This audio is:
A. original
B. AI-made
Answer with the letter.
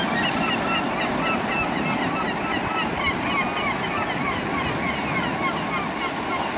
A